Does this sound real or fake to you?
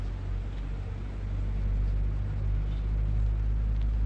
real